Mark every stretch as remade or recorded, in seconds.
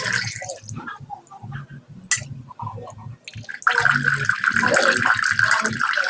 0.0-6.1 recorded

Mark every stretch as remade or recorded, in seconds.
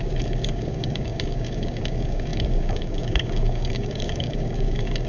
0.0-5.1 remade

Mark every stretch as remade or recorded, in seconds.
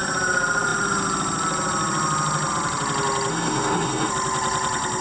0.0-3.3 recorded; 3.3-4.1 remade; 4.1-5.0 recorded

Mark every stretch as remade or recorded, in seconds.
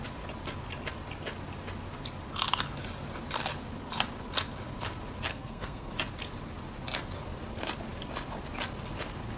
0.0-5.3 recorded; 5.3-5.9 remade; 5.9-9.4 recorded